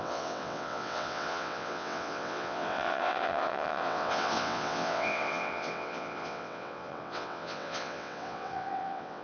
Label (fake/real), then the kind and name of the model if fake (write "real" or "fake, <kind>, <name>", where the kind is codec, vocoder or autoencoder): fake, vocoder, WaveNeXt